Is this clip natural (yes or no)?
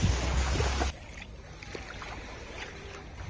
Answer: yes